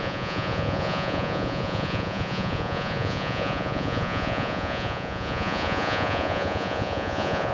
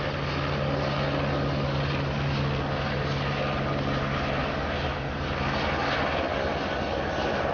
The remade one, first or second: first